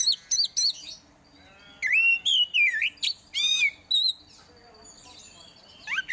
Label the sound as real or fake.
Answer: real